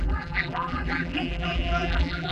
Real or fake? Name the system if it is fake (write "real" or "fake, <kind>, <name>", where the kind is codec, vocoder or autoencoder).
fake, vocoder, BigVGAN v2